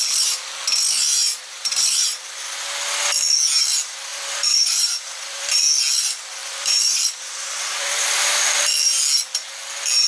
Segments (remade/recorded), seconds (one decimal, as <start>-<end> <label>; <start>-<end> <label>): 0.0-1.2 recorded; 1.2-1.8 remade; 1.8-4.1 recorded; 4.1-5.6 remade; 5.6-6.4 recorded; 6.4-8.6 remade; 8.6-10.1 recorded